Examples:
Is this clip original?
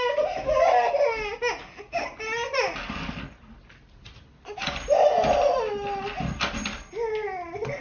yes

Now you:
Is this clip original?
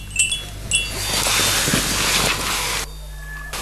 yes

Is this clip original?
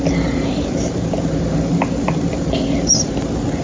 yes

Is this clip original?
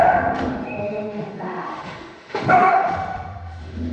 no